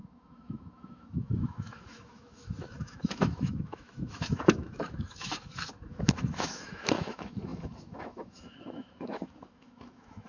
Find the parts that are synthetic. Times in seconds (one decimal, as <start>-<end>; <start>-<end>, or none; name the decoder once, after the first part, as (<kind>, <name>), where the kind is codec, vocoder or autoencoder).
0.0-10.3 (autoencoder, DAC-VAE)